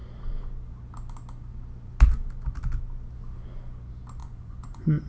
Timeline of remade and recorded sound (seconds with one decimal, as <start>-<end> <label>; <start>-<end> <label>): 0.0-4.2 recorded; 4.2-5.1 remade